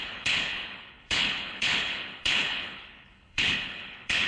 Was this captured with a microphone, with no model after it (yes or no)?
no